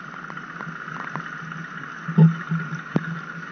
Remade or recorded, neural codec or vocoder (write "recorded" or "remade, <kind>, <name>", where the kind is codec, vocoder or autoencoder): recorded